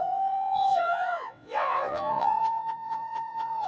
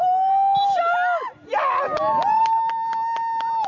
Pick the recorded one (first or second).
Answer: second